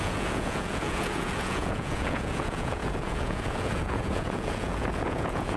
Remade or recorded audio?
remade